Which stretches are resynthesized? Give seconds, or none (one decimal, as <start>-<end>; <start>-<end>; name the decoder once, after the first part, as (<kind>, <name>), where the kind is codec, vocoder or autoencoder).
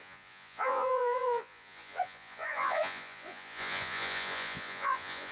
0.0-5.3 (vocoder, Vocos)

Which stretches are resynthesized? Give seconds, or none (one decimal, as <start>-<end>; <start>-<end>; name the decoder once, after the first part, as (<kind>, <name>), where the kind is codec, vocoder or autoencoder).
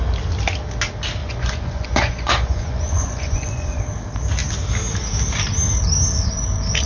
1.2-3.8 (vocoder, Vocos)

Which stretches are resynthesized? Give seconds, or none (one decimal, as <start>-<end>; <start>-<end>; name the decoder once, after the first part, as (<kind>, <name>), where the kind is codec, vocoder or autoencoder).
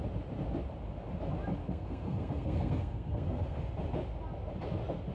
1.6-3.6 (codec, SNAC)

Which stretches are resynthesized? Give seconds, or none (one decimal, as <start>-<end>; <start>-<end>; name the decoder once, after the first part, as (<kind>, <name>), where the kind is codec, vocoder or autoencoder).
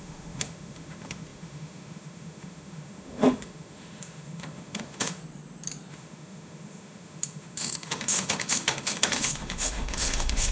0.0-5.2 (autoencoder, DAC-VAE); 5.9-10.5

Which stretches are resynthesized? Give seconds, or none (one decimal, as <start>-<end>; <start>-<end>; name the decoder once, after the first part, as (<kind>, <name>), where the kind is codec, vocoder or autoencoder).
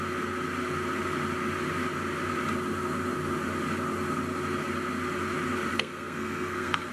5.7-6.9 (codec, SNAC)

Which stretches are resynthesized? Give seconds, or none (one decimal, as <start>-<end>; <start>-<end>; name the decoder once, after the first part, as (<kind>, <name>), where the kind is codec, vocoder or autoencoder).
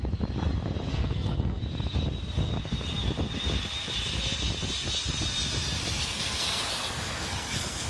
0.9-1.6 (codec, SNAC); 6.0-7.9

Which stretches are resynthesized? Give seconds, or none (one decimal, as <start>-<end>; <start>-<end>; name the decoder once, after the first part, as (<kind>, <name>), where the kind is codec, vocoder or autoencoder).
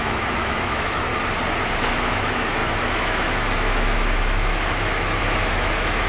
0.0-1.1 (autoencoder, DAC-VAE); 1.8-6.1